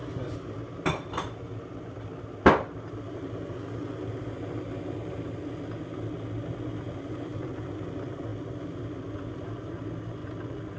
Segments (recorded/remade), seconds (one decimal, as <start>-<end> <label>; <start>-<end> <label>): 0.0-2.1 remade; 2.1-7.3 recorded; 7.3-7.9 remade; 7.9-10.2 recorded; 10.2-10.8 remade